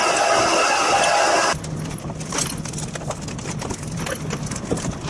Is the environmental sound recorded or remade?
recorded